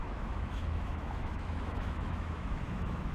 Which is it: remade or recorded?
remade